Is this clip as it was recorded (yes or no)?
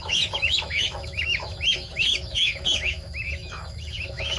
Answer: no